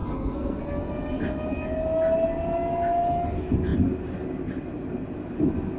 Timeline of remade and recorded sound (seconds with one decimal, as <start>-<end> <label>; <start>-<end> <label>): 0.0-0.6 remade; 0.6-5.8 recorded